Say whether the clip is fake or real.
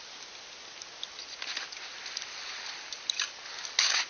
real